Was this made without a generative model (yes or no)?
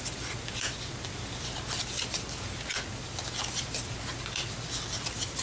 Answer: yes